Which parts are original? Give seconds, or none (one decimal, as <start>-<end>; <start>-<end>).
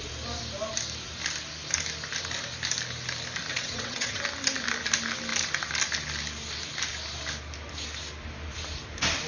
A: 0.0-3.5; 4.2-9.3